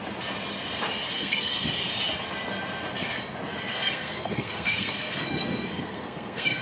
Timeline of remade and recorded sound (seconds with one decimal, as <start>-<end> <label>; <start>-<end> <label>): 0.0-1.1 recorded; 1.1-1.6 remade; 1.6-3.7 recorded; 3.7-6.6 remade